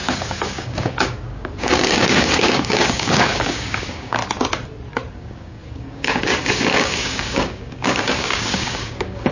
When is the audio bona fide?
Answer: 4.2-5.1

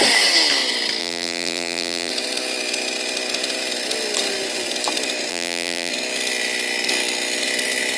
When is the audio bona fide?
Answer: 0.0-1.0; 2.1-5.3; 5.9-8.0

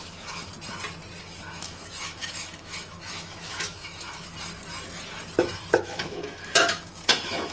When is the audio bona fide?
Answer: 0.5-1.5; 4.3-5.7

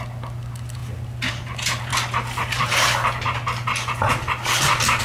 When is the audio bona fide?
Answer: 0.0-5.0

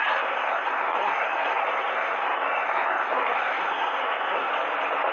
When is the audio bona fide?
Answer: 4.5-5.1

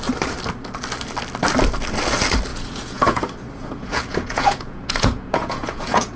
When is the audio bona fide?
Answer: 0.0-2.5; 3.2-3.6

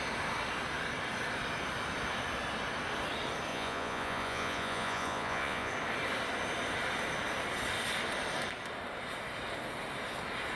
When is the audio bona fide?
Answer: 0.0-3.5; 5.7-10.6